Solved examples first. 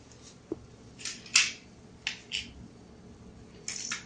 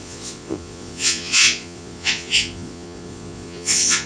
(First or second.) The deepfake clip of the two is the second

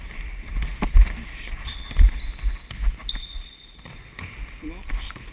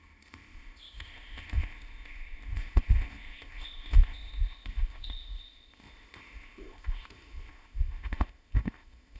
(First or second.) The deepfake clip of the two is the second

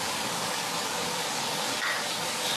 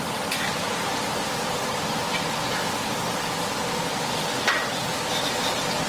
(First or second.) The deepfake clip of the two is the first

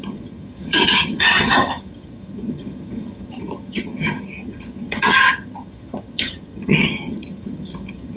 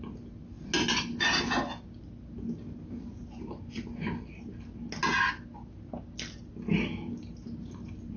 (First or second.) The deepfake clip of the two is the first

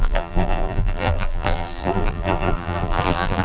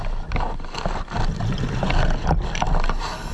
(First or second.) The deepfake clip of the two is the first